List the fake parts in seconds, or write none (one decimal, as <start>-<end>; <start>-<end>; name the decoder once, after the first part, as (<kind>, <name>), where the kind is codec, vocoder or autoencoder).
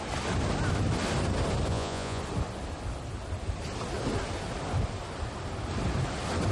1.7-2.2 (vocoder, Vocos)